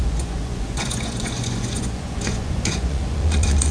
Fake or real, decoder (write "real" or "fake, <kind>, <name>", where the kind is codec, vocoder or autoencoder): fake, vocoder, Vocos